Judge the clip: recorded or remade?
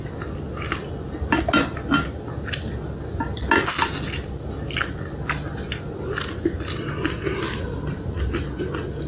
recorded